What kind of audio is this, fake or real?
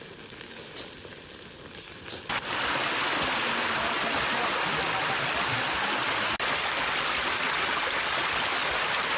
real